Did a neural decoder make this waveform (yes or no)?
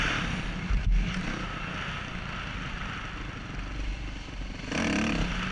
no